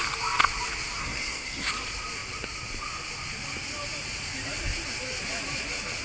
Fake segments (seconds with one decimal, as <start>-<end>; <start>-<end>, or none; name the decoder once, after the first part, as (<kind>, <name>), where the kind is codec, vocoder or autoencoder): 1.0-1.7 (codec, SNAC)